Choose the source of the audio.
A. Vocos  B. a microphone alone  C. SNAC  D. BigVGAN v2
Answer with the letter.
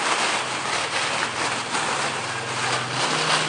B